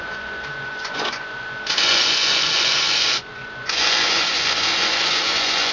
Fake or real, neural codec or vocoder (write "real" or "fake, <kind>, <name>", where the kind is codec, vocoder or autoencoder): fake, vocoder, Vocos